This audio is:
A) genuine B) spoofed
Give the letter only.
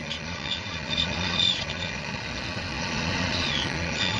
B